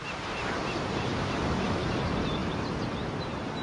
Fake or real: fake